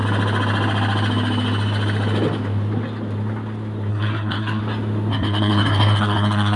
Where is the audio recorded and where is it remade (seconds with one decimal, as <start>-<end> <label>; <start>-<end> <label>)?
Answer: 0.0-3.9 recorded; 3.9-4.6 remade; 4.6-5.1 recorded; 5.1-6.6 remade